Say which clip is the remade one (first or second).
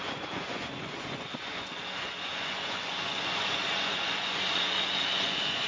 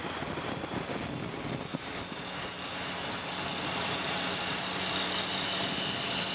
first